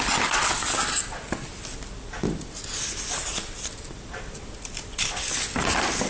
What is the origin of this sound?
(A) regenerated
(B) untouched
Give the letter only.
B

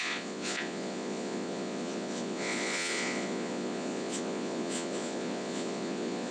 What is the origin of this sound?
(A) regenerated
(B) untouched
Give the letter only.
A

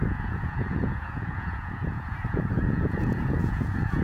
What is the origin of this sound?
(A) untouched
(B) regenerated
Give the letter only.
B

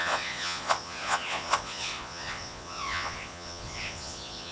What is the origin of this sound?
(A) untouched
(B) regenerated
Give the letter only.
B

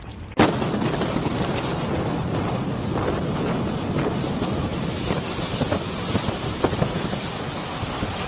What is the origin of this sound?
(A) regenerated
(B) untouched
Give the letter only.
B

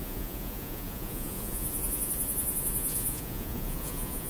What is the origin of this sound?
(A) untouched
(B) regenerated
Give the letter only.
B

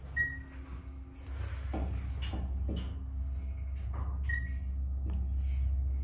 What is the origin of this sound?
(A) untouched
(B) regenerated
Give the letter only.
A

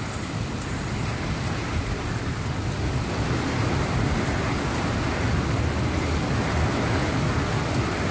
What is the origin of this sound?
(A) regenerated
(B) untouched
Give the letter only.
B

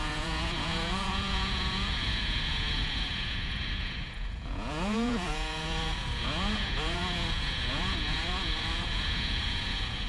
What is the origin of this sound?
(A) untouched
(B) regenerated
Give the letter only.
B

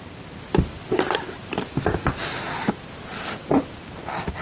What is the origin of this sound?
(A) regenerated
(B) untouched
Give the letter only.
B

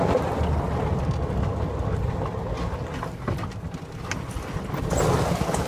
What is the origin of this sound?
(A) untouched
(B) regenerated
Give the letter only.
A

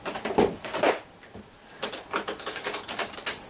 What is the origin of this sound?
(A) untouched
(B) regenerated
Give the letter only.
A